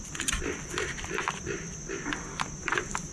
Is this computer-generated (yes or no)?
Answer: yes